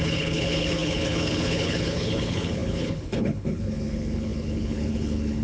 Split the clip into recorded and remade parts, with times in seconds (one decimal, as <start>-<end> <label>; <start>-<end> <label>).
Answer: 0.0-5.4 remade